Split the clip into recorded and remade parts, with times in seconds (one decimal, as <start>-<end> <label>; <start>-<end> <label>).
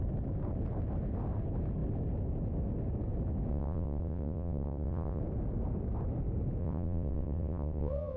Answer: 0.0-3.5 recorded; 3.5-5.2 remade; 5.2-6.6 recorded; 6.6-8.2 remade